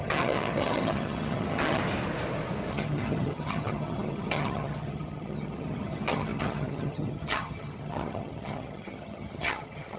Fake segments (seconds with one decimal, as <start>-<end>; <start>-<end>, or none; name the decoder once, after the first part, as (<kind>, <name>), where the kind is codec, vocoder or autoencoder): 0.0-1.8 (vocoder, HiFi-GAN); 2.7-10.0